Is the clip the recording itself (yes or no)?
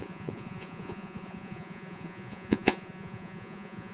no